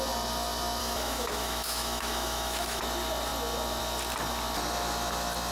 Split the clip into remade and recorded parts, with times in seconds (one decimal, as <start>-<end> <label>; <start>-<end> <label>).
0.0-0.8 recorded; 0.8-2.8 remade; 2.8-5.5 recorded